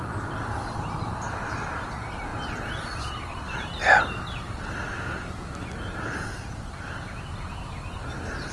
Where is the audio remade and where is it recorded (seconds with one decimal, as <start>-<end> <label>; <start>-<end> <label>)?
0.0-8.5 recorded